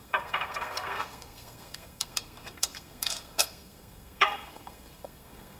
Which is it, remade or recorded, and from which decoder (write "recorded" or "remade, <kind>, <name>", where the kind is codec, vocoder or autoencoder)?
remade, codec, SNAC